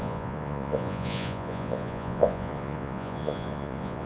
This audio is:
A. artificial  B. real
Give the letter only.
A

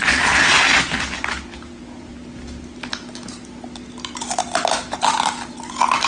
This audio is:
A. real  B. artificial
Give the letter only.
A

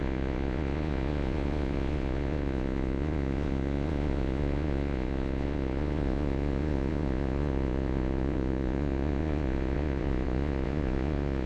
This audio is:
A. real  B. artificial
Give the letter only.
B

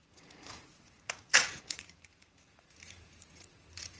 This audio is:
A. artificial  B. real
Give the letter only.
A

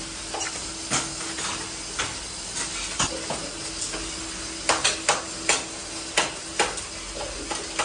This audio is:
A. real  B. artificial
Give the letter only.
A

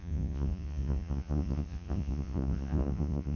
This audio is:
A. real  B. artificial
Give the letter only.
B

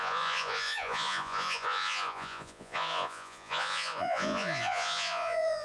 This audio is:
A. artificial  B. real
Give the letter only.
A